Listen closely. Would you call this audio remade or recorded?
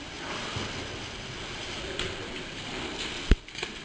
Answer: recorded